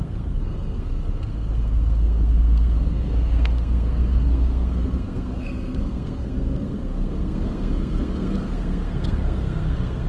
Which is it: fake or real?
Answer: fake